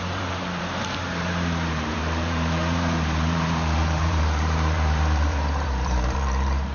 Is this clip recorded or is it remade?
remade